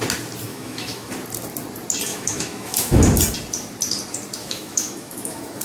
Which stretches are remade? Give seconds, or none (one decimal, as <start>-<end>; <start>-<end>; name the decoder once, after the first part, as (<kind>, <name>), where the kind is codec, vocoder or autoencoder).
0.5-1.1 (autoencoder, DAC-VAE); 2.1-3.0; 4.4-5.6